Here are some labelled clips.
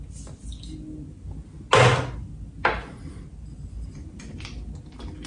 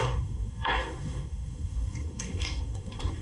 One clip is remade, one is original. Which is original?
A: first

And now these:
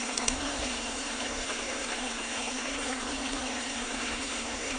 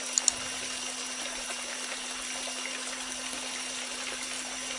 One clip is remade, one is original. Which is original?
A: second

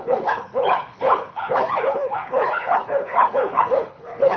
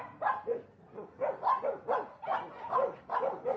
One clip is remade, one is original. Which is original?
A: second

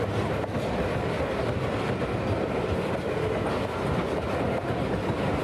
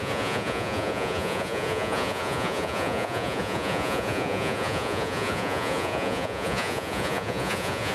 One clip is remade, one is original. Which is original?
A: first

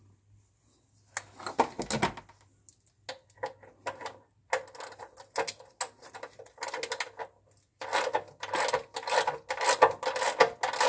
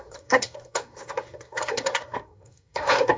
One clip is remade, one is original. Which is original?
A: first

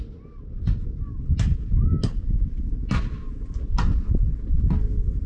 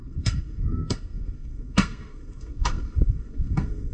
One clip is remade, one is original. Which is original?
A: first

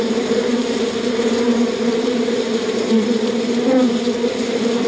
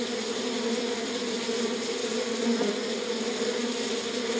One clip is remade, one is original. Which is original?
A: second